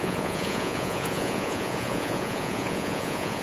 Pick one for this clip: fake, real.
fake